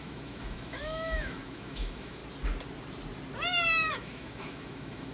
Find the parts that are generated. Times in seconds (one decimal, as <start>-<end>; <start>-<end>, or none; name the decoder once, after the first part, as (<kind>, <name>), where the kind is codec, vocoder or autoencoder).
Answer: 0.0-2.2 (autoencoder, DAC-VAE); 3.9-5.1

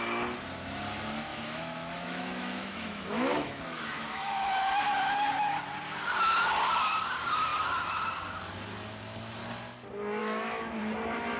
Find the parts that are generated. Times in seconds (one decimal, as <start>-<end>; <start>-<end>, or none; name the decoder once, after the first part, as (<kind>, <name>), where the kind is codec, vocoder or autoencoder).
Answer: 1.3-4.8 (autoencoder, DAC-VAE); 10.2-10.8

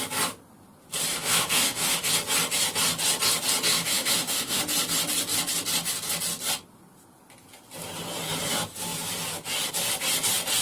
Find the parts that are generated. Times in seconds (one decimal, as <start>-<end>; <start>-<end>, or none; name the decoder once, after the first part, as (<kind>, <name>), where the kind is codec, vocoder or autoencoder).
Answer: 1.1-2.1 (autoencoder, DAC-VAE); 3.7-4.6